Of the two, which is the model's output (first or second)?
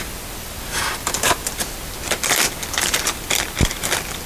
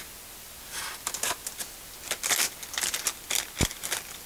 first